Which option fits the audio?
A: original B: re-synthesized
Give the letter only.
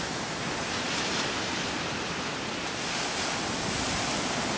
A